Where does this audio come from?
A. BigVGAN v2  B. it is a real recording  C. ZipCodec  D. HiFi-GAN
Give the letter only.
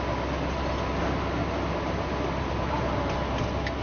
B